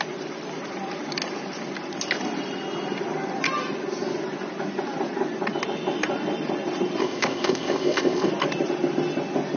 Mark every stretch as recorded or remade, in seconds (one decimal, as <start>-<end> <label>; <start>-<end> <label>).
0.0-7.0 recorded; 7.0-8.3 remade; 8.3-9.6 recorded